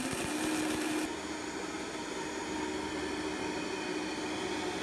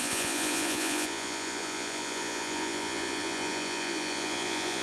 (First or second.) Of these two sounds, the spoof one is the second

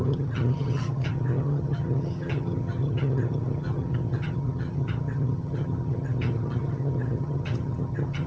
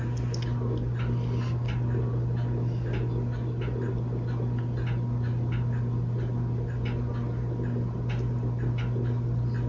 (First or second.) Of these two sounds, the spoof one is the first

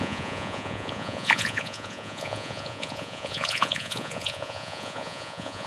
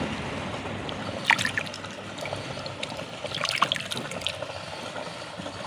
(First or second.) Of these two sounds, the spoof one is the first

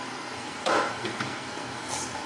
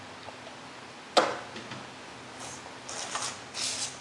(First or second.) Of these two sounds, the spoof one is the first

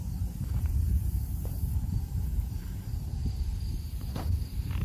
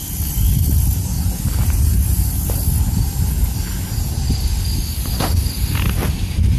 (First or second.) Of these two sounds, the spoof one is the first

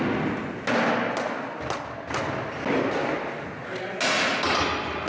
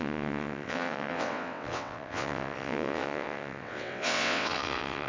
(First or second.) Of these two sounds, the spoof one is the second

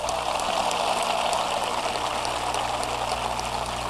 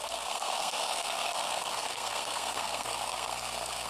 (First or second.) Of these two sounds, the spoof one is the second